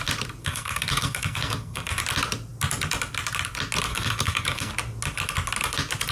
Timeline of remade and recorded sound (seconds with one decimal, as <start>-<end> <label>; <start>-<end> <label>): 0.0-0.4 recorded; 0.4-2.0 remade; 2.0-3.9 recorded; 3.9-4.7 remade; 4.7-6.1 recorded